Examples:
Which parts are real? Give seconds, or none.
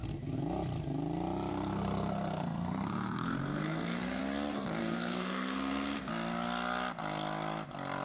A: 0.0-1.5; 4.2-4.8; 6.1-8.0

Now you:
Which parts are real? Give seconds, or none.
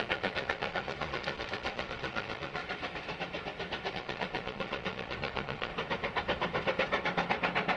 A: 2.6-3.9; 5.7-7.8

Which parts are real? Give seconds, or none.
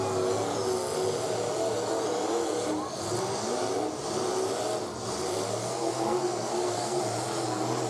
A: 0.0-5.6; 7.0-7.9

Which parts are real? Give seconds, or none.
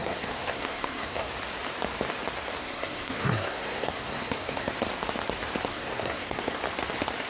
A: 1.3-2.6; 4.7-5.7; 6.6-7.3